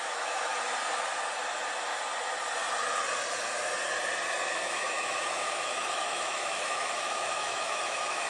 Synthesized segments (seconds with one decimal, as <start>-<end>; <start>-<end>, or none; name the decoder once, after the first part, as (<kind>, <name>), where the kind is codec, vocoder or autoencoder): 0.0-0.5 (autoencoder, DAC-VAE); 4.5-8.3